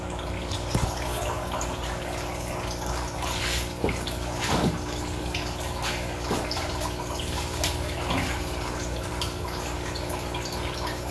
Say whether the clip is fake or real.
fake